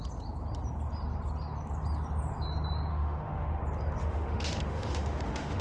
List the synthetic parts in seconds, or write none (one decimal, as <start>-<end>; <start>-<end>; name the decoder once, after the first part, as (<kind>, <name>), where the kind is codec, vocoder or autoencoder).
2.9-3.6 (autoencoder, DAC-VAE); 4.0-5.6